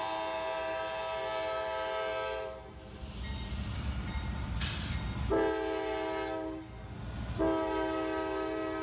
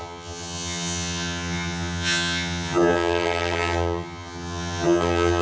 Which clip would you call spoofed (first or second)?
second